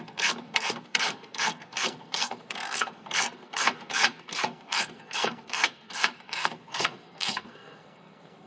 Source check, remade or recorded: remade